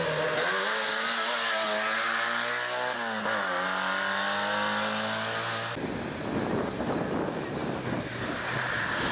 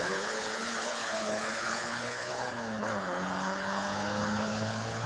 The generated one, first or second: second